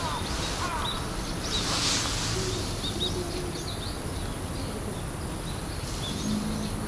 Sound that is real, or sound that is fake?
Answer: real